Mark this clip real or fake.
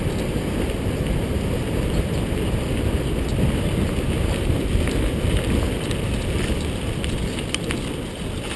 real